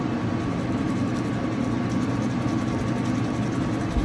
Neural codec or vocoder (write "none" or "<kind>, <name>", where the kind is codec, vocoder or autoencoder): none